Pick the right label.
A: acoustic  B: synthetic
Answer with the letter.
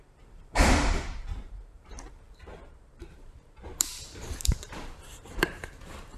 B